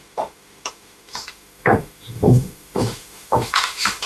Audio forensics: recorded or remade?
remade